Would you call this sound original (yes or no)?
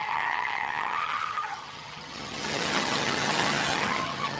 no